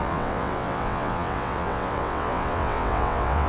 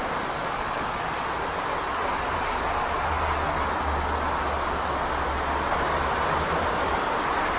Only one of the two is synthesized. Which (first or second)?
first